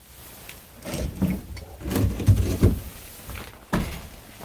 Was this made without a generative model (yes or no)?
yes